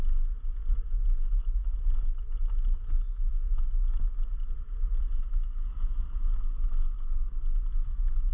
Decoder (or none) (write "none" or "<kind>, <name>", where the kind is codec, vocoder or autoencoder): none